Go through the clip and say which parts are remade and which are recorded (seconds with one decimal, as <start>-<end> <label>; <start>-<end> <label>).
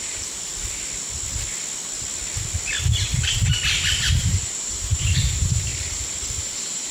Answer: 0.0-0.5 remade; 0.5-4.1 recorded; 4.1-5.7 remade; 5.7-6.4 recorded; 6.4-6.9 remade